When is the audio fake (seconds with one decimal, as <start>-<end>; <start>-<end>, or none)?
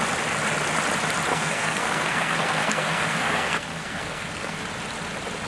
1.3-4.6